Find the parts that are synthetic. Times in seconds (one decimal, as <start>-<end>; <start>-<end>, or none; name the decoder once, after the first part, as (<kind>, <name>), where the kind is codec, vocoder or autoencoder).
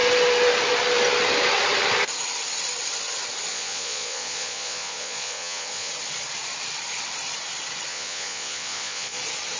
3.5-5.9 (vocoder, Vocos); 7.9-9.2